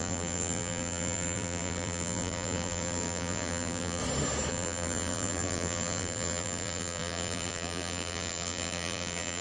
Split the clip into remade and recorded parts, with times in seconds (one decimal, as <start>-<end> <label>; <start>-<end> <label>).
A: 0.0-4.0 remade; 4.0-4.5 recorded; 4.5-9.4 remade